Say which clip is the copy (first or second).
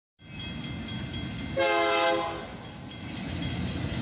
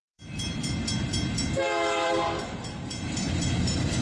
second